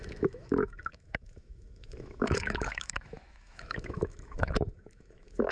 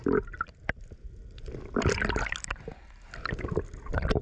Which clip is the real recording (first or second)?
second